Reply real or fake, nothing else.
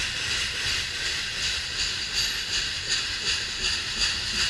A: real